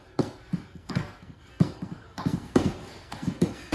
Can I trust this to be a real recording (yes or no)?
no